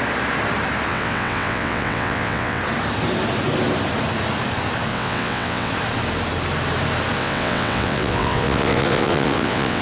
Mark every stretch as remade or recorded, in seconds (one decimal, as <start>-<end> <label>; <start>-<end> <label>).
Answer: 0.0-0.9 recorded; 0.9-2.6 remade; 2.6-4.9 recorded; 4.9-5.7 remade; 5.7-7.2 recorded; 7.2-9.8 remade